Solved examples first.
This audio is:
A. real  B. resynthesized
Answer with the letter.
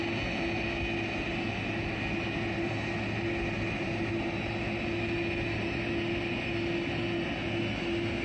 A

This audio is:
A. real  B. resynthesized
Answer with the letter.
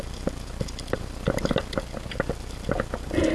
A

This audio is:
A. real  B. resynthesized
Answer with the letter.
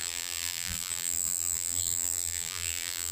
B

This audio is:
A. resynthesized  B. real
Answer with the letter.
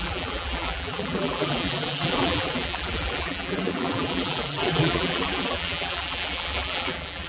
A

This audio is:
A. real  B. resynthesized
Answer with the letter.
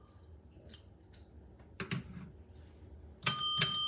A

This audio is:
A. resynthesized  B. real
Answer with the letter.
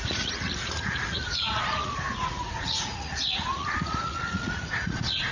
A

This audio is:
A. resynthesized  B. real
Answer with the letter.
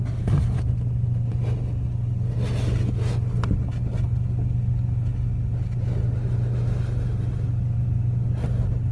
B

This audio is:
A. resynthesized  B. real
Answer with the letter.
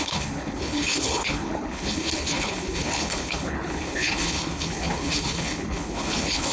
A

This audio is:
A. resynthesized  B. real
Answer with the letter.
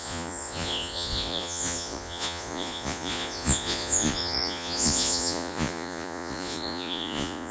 A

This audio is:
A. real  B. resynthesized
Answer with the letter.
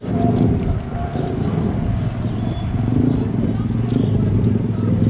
A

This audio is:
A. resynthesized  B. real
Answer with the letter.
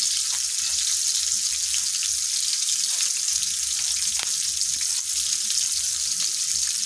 B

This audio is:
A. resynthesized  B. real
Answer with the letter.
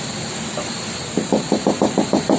B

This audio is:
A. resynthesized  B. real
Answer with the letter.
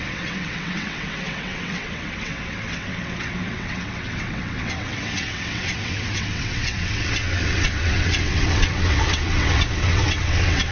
A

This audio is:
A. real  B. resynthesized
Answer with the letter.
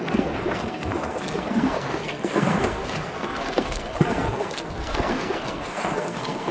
B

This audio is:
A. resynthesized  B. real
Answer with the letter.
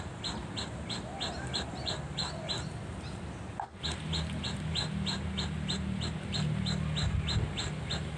B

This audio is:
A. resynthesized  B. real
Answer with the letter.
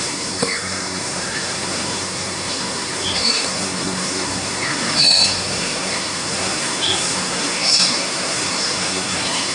A